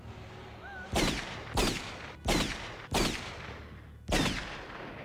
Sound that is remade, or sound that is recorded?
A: recorded